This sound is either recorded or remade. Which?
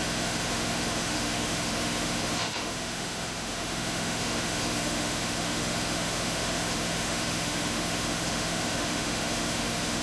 remade